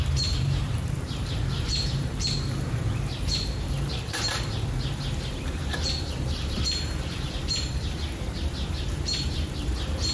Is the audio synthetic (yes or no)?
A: yes